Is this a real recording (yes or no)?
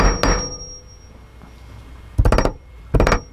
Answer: yes